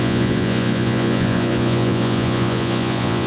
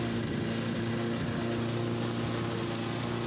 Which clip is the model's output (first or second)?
first